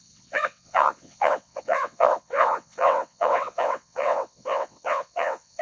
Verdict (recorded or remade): remade